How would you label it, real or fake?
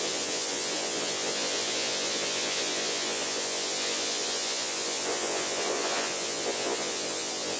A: fake